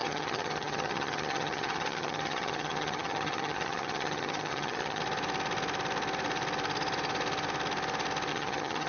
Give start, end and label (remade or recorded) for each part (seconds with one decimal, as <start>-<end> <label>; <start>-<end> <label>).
0.0-5.0 remade; 5.0-8.3 recorded; 8.3-8.9 remade